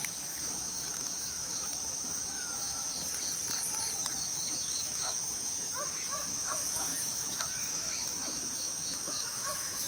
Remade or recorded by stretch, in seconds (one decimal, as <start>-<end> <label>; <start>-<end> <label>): 0.0-2.9 remade; 2.9-4.2 recorded; 4.2-9.9 remade